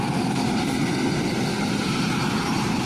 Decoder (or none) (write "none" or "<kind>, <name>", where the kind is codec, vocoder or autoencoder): none